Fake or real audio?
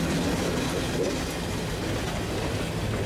real